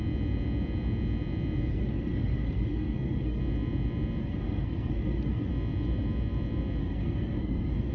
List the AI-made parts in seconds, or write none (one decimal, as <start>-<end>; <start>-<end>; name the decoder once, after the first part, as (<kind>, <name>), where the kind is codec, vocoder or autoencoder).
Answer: 1.7-3.4 (codec, SNAC); 4.2-5.5; 6.8-7.9